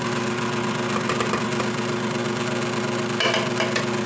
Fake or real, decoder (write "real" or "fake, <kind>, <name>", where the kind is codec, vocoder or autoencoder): real